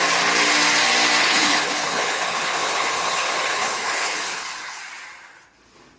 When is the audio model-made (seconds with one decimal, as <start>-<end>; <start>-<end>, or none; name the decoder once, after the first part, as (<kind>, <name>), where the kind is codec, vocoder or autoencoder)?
1.2-4.8 (codec, HILCodec)